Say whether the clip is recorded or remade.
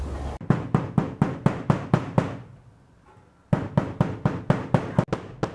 recorded